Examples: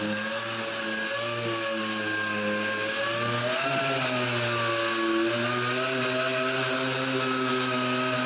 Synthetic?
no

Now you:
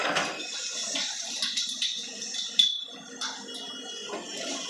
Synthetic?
no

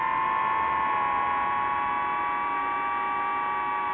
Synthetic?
no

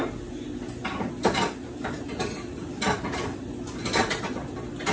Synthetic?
no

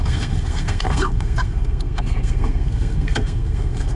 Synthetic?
yes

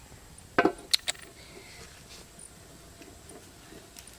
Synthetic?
no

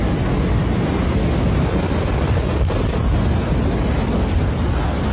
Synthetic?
no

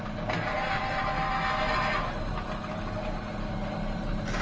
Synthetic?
no